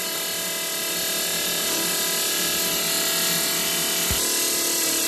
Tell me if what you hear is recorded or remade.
recorded